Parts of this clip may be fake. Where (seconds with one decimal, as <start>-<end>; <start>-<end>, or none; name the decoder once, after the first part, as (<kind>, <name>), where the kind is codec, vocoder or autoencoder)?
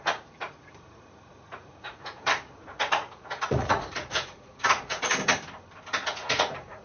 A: 0.0-5.1 (vocoder, Vocos); 6.1-6.8